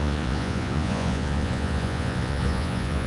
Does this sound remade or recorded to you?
remade